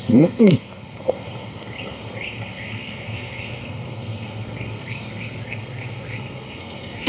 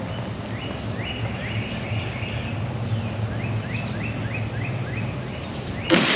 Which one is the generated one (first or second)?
first